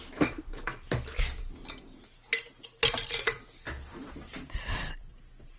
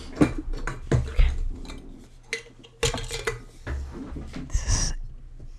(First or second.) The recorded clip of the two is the second